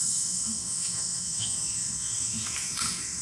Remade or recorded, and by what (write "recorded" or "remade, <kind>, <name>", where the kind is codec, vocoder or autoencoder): remade, autoencoder, DAC-VAE